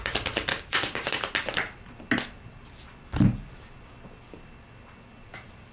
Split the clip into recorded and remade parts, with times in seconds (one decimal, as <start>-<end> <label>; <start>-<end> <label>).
0.0-0.5 recorded; 0.5-1.1 remade; 1.1-5.7 recorded